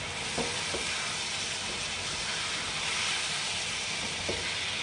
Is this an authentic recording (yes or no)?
yes